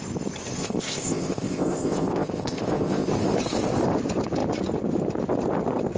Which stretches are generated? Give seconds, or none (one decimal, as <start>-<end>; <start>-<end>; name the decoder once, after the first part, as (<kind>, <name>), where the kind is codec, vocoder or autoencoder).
0.6-3.1 (codec, ZipCodec)